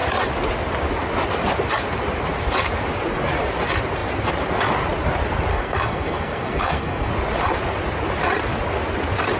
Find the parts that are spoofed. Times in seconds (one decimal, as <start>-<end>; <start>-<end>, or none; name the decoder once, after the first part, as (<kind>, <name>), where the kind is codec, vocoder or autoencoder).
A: 5.5-7.1 (codec, SNAC)